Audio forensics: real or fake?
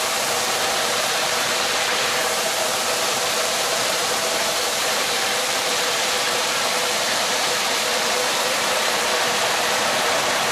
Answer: fake